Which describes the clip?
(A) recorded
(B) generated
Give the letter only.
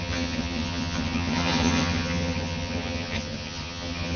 B